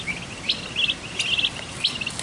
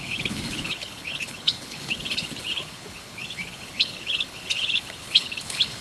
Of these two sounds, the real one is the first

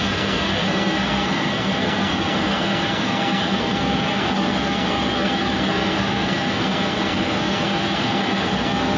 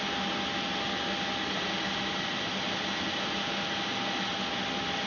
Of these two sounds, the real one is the second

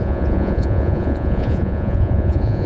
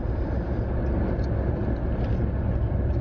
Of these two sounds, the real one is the second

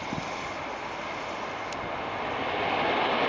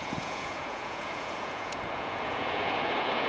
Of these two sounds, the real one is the first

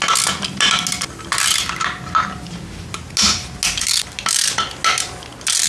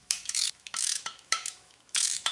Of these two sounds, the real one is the first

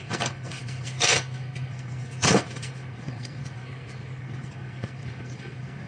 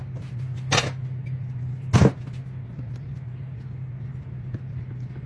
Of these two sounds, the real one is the second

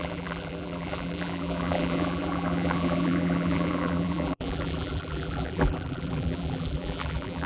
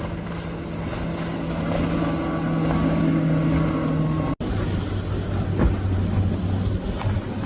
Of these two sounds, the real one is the second